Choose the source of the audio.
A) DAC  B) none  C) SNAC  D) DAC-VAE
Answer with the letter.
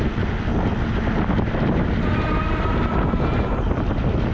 B